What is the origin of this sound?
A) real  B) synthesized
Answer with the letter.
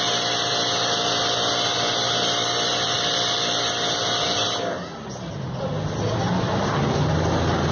A